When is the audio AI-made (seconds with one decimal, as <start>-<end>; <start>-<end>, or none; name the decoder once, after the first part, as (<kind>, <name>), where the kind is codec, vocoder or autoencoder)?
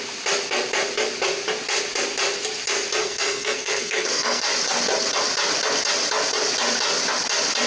3.0-4.4 (codec, SNAC)